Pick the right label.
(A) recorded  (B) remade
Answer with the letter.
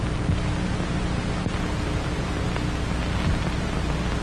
A